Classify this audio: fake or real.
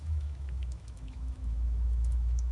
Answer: fake